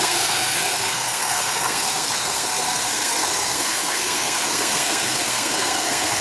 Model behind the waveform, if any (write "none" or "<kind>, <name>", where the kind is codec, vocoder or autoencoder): codec, SNAC